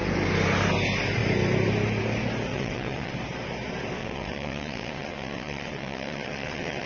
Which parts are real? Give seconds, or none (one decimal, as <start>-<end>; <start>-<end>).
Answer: 0.0-2.5; 3.1-4.0